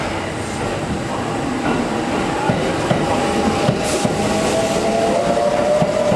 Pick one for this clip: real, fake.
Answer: real